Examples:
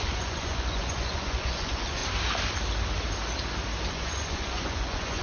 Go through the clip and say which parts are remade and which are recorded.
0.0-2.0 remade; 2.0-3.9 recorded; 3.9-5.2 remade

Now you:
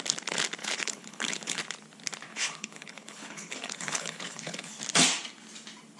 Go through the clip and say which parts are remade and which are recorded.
0.0-0.6 recorded; 0.6-1.6 remade; 1.6-2.3 recorded; 2.3-4.8 remade; 4.8-6.0 recorded

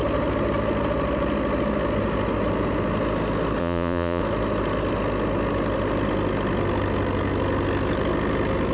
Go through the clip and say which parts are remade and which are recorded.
0.0-3.6 recorded; 3.6-4.2 remade; 4.2-8.7 recorded

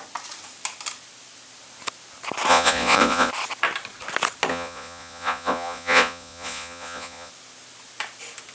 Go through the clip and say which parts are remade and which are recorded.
0.0-2.5 recorded; 2.5-3.3 remade; 3.3-4.5 recorded; 4.5-7.3 remade; 7.3-8.5 recorded

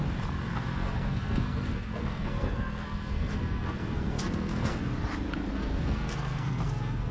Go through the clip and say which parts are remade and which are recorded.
0.0-0.5 recorded; 0.5-4.8 remade; 4.8-5.5 recorded; 5.5-7.1 remade